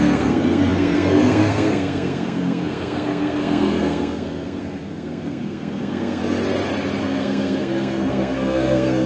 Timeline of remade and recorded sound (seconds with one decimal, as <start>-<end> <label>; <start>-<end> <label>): 0.0-6.2 remade; 6.2-7.0 recorded; 7.0-9.1 remade